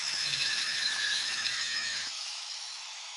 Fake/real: fake